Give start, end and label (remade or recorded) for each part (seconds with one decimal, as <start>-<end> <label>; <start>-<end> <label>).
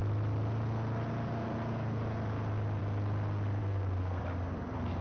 0.0-3.6 recorded; 3.6-4.2 remade; 4.2-5.0 recorded